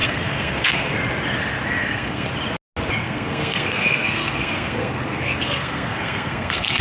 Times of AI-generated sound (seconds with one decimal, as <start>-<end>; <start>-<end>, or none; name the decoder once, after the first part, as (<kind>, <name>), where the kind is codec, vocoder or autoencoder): 0.0-1.0 (codec, SNAC); 1.8-2.3; 3.0-6.8